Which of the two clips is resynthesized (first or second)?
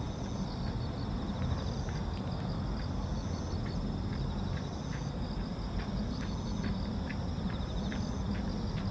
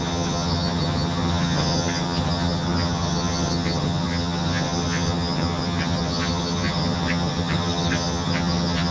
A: second